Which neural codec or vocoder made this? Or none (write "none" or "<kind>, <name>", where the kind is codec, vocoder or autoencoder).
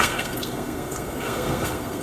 codec, SNAC